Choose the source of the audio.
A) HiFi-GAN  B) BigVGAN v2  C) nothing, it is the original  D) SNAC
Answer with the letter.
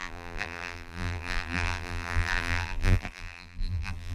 B